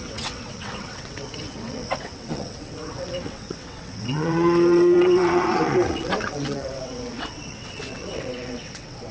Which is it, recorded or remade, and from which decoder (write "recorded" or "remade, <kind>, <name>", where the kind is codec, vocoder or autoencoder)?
remade, vocoder, WaveNeXt